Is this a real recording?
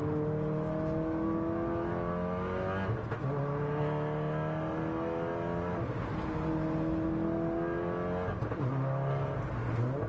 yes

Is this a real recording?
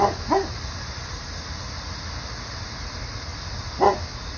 yes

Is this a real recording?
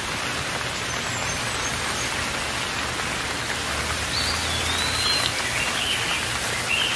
yes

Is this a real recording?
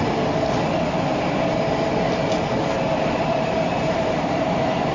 no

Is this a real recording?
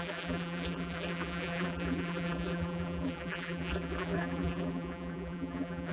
no